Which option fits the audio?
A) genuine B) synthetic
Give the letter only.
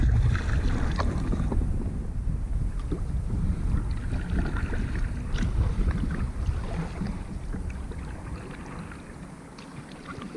A